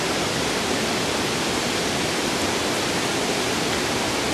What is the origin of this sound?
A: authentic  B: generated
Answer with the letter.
A